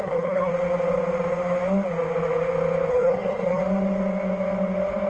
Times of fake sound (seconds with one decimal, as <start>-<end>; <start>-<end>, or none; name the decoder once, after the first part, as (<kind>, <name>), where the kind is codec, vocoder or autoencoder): 0.0-0.5 (codec, SNAC); 2.9-3.6